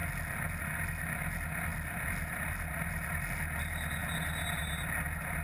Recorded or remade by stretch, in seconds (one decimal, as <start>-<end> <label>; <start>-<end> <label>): 0.0-5.4 recorded